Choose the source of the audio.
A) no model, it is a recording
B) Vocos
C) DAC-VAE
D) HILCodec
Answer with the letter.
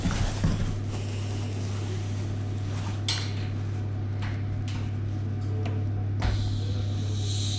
A